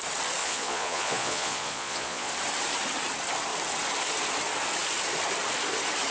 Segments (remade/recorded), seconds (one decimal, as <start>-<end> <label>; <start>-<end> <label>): 0.0-0.4 recorded; 0.4-2.3 remade; 2.3-6.1 recorded